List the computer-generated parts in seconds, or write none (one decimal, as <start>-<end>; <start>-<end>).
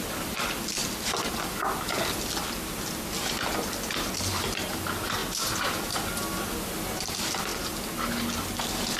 none